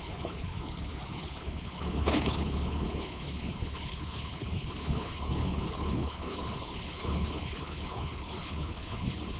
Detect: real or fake fake